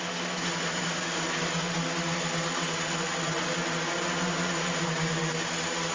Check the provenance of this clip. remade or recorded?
recorded